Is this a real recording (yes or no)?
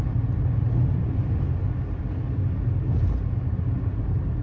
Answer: yes